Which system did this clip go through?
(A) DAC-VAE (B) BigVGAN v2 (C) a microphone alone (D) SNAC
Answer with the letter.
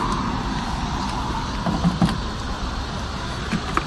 C